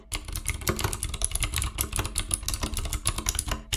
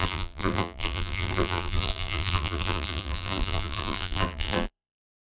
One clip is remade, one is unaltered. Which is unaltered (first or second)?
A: first